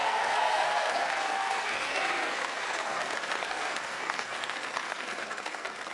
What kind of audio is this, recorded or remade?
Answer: remade